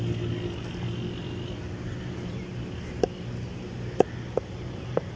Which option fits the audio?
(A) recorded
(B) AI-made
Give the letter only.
A